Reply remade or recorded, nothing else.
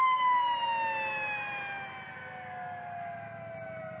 recorded